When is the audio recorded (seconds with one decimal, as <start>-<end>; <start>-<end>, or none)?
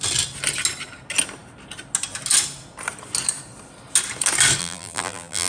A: 0.0-4.6